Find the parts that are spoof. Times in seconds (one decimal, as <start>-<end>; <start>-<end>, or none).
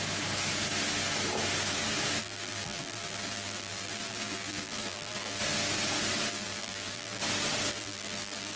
2.2-5.4; 6.3-7.2; 7.7-8.6